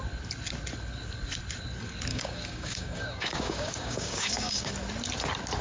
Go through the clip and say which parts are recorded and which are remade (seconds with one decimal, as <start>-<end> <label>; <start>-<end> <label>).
0.0-2.1 recorded; 2.1-4.7 remade; 4.7-5.6 recorded